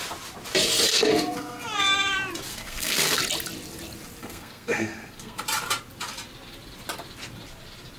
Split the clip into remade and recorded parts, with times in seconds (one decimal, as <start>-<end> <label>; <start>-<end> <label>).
0.0-0.9 recorded; 0.9-1.8 remade; 1.8-2.5 recorded; 2.5-3.2 remade; 3.2-4.2 recorded; 4.2-5.4 remade; 5.4-8.0 recorded